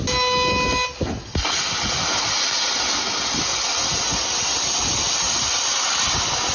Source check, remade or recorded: recorded